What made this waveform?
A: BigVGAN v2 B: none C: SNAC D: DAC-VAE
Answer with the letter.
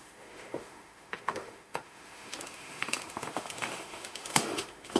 D